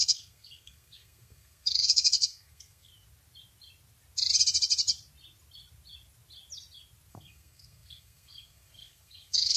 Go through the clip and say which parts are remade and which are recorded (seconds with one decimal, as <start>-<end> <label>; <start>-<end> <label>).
0.0-2.9 remade; 2.9-7.1 recorded; 7.1-9.6 remade